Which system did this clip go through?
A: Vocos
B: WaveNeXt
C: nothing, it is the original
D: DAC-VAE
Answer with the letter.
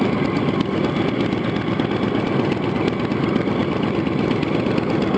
C